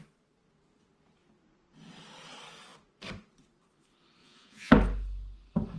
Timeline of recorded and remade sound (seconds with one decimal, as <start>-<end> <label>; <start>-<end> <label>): 0.0-4.2 recorded; 4.2-4.7 remade; 4.7-5.8 recorded